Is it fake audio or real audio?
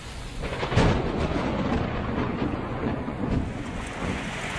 fake